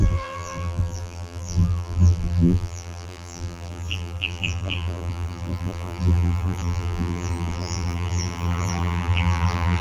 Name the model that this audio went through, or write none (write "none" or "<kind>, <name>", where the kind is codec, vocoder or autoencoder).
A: vocoder, BigVGAN v2